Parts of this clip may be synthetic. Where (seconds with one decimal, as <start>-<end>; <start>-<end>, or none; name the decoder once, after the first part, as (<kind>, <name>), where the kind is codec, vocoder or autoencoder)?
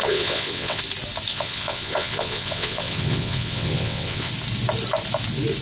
0.0-0.8 (vocoder, WaveNeXt); 1.3-4.3